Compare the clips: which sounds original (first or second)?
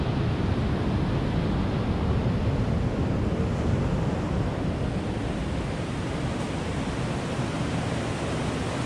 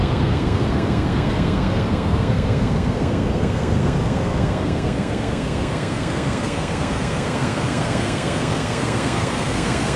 first